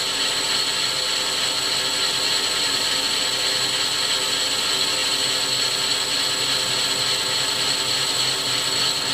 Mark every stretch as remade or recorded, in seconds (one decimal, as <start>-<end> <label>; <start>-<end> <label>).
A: 0.0-9.1 recorded